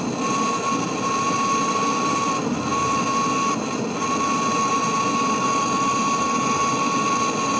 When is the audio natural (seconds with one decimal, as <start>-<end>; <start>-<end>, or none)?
0.0-7.6